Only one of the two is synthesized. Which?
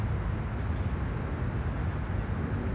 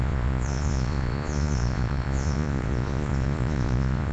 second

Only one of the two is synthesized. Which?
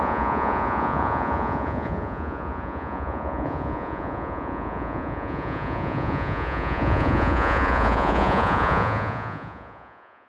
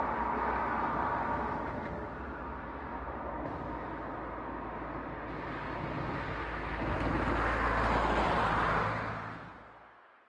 first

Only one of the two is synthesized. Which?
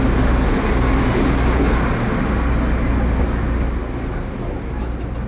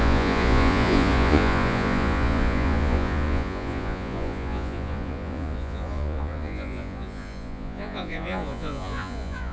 second